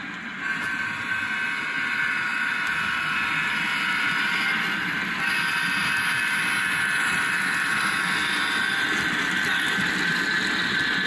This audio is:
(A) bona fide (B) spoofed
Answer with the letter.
A